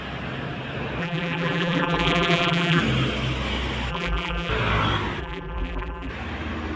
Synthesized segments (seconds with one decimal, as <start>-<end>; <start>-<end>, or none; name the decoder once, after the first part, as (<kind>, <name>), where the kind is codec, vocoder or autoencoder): 1.0-2.8 (vocoder, BigVGAN v2); 3.9-4.5; 5.2-6.1